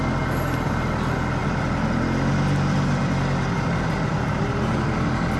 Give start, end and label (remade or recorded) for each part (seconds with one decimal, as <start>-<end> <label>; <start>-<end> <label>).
0.0-5.4 recorded